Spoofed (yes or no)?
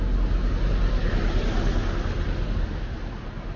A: no